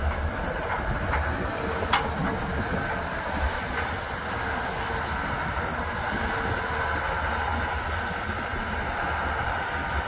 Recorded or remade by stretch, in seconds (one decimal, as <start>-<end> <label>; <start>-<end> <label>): 0.0-10.1 recorded